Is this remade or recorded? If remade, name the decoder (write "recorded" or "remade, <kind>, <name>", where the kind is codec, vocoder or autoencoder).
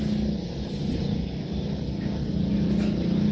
recorded